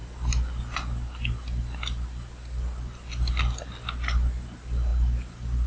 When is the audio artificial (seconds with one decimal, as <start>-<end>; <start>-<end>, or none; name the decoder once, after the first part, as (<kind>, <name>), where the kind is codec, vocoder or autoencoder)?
none

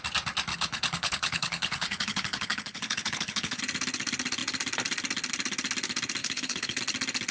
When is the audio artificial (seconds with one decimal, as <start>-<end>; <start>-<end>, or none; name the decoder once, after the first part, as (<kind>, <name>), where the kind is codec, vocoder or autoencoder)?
0.5-3.6 (codec, HILCodec); 6.2-6.8

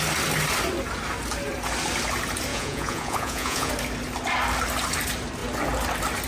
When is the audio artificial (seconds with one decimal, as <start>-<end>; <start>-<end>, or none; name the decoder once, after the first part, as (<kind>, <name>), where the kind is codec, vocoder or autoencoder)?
2.5-3.7 (vocoder, Vocos)

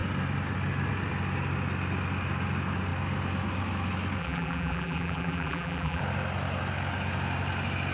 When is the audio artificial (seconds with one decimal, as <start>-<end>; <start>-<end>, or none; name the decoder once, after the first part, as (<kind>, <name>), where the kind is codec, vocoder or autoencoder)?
4.2-6.0 (vocoder, BigVGAN v2)

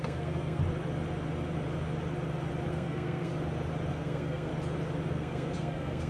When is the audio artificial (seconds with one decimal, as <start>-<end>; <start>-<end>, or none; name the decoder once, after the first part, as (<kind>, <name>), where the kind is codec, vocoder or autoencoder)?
0.0-0.6 (codec, SNAC); 2.7-3.3; 3.9-4.5; 5.1-6.1

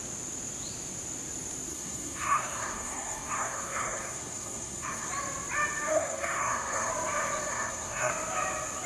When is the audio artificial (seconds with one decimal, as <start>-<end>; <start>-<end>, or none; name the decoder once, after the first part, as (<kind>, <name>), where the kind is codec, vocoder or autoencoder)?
1.7-5.1 (codec, SNAC); 5.9-6.9; 7.5-8.1